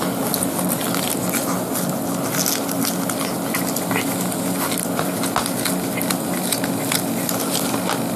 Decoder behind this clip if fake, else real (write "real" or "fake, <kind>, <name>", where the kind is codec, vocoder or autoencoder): real